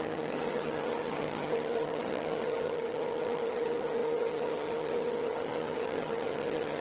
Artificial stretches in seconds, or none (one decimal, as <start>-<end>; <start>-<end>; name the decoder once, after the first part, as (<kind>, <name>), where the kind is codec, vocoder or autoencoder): 0.0-6.8 (vocoder, HiFi-GAN)